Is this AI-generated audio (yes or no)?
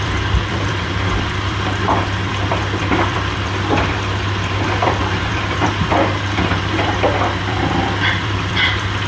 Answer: yes